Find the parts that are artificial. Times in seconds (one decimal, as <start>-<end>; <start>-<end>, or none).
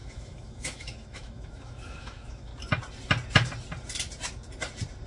0.0-2.5